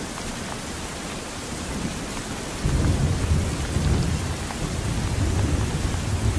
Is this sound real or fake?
real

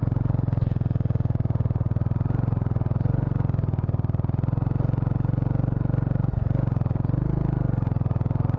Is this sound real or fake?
real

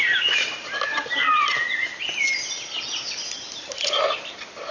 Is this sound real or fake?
real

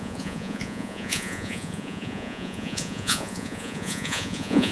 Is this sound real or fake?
fake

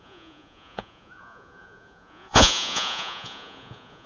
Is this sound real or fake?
fake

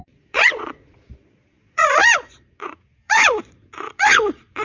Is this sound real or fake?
fake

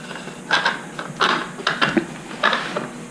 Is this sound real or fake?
real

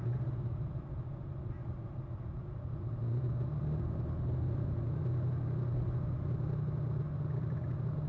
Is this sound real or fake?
real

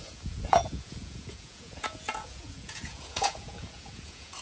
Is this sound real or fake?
fake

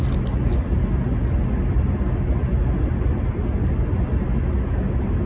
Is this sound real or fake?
real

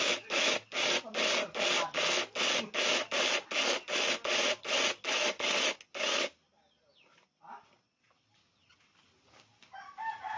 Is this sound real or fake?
real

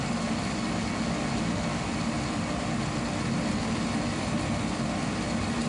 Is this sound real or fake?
real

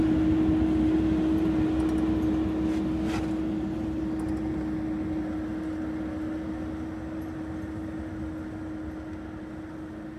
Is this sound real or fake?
real